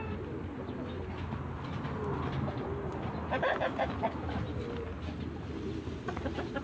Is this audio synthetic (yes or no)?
no